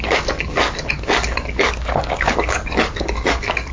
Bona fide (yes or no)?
no